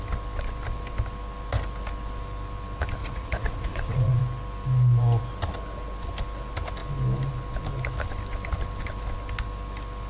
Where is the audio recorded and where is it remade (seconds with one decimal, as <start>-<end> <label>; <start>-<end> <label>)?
0.0-3.0 recorded; 3.0-4.2 remade; 4.2-10.1 recorded